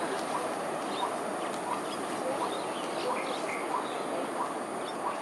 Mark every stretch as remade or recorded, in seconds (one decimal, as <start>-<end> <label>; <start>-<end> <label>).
0.0-5.2 recorded